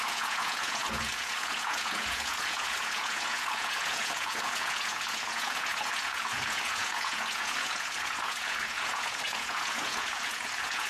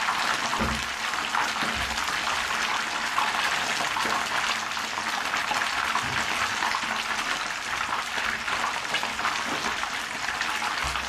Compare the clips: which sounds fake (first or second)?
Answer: first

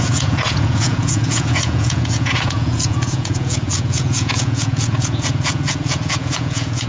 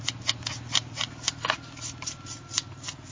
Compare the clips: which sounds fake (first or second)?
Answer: first